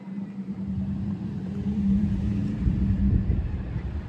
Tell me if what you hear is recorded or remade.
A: remade